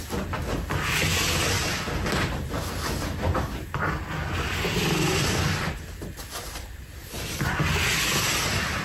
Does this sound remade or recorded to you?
recorded